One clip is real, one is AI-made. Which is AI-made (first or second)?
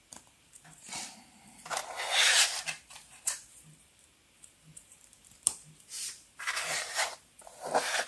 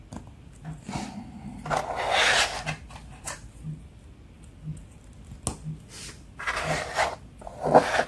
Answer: first